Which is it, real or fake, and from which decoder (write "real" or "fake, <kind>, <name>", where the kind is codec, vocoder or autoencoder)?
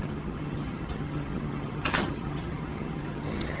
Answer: fake, vocoder, HiFi-GAN